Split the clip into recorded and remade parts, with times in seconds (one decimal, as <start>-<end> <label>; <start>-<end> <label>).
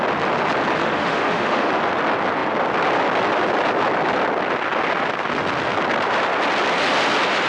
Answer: 0.0-0.8 recorded; 0.8-1.7 remade; 1.7-7.5 recorded